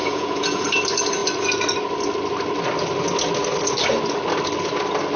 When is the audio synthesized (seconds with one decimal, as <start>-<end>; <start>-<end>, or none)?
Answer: 0.0-0.6